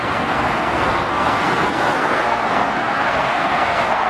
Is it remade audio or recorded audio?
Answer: remade